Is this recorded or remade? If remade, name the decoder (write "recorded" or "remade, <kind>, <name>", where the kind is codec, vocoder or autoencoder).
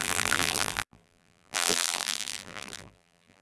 remade, vocoder, BigVGAN v2